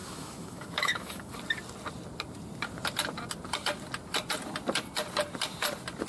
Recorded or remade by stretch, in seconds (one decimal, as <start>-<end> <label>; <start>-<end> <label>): 0.0-1.3 remade; 1.3-6.1 recorded

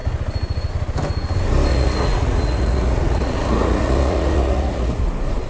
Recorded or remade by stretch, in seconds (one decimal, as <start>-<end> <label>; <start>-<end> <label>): 0.0-1.7 recorded; 1.7-5.0 remade; 5.0-5.5 recorded

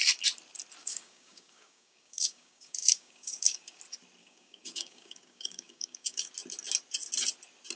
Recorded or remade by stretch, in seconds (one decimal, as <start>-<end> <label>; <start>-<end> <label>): 0.0-0.8 recorded; 0.8-3.8 remade; 3.8-4.2 recorded; 4.2-6.3 remade; 6.3-7.8 recorded

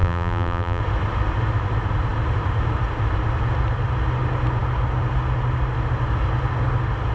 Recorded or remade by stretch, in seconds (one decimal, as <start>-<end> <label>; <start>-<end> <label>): 0.0-0.8 remade; 0.8-7.1 recorded

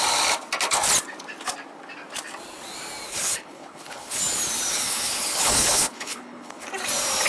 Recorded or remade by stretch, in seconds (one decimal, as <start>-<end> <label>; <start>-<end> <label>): 0.0-3.1 recorded; 3.1-4.2 remade; 4.2-4.7 recorded; 4.7-6.7 remade; 6.7-7.3 recorded

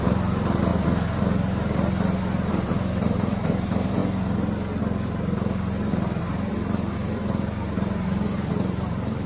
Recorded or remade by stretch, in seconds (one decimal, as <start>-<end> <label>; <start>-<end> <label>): 0.0-0.7 remade; 0.7-2.5 recorded; 2.5-4.0 remade; 4.0-6.2 recorded; 6.2-9.3 remade

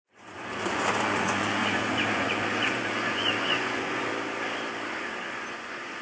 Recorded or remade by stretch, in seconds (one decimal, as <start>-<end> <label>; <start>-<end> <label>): 0.0-4.1 remade; 4.1-4.9 recorded; 4.9-6.0 remade

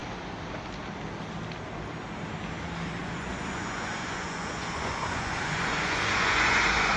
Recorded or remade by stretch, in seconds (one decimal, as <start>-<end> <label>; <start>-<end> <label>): 0.0-3.0 recorded; 3.0-7.0 remade